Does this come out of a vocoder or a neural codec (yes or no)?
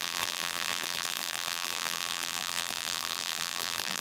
yes